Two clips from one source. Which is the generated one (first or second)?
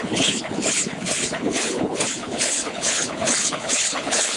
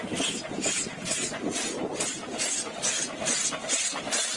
first